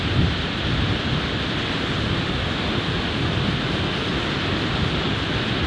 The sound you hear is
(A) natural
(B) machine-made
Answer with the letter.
A